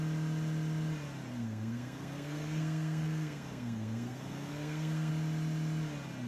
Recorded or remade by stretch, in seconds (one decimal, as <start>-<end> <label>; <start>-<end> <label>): 0.0-1.3 recorded; 1.3-5.1 remade; 5.1-6.3 recorded